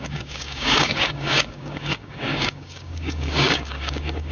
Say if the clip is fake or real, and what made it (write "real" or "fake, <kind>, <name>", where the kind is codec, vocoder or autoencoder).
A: fake, codec, DAC